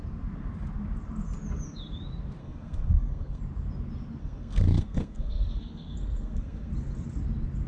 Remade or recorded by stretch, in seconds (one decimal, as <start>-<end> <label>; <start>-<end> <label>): 0.0-2.4 recorded; 2.4-3.4 remade; 3.4-4.2 recorded; 4.2-6.7 remade; 6.7-7.7 recorded

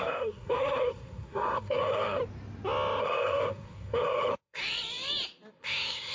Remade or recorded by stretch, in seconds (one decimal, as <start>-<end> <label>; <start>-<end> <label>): 0.0-2.2 remade; 2.2-3.0 recorded; 3.0-4.6 remade; 4.6-5.5 recorded; 5.5-6.1 remade

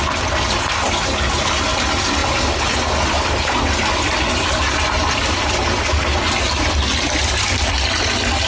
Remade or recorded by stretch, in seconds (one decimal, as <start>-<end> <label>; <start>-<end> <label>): 0.0-8.5 recorded

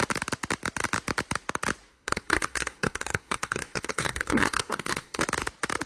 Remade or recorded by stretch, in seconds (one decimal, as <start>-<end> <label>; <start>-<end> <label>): 0.0-1.9 recorded; 1.9-5.2 remade; 5.2-5.9 recorded

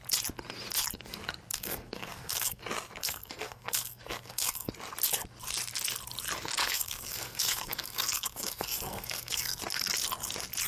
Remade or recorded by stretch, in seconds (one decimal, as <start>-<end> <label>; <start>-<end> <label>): 0.0-1.5 recorded; 1.5-2.6 remade; 2.6-3.0 recorded; 3.0-4.7 remade; 4.7-6.6 recorded; 6.6-9.6 remade; 9.6-10.7 recorded

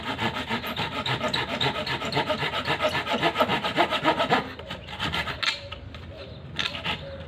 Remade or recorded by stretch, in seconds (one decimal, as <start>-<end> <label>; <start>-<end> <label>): 0.0-7.3 recorded